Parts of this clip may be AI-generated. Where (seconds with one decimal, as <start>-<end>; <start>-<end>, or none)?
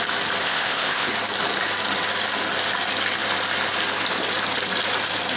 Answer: 0.4-1.1